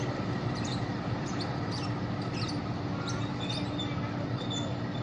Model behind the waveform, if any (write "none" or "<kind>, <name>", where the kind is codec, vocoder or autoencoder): none